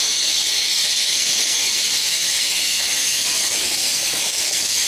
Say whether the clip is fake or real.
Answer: fake